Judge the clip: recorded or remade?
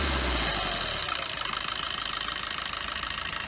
recorded